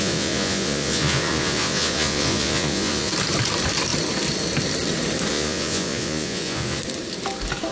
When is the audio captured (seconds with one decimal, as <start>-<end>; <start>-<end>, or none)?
3.1-5.3; 6.8-7.7

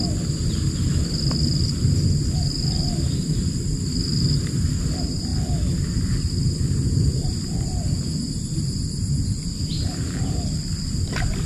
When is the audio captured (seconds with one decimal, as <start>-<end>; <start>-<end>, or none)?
0.0-11.5

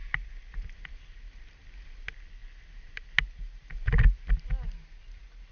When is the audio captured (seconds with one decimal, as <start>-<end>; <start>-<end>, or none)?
0.0-5.5

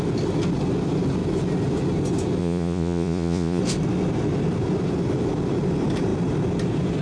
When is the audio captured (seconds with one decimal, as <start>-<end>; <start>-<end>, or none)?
0.0-2.4; 3.6-7.0

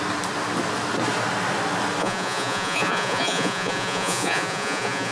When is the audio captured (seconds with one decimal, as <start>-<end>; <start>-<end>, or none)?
0.0-2.0

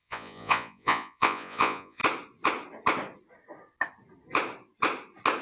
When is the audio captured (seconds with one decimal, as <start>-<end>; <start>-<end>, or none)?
2.0-5.4

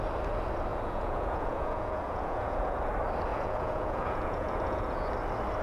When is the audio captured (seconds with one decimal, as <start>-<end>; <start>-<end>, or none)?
0.0-0.7; 2.8-3.3; 5.1-5.6

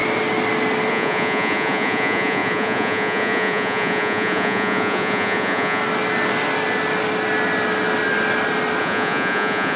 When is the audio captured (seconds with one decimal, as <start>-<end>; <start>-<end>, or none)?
0.0-0.9; 5.8-8.8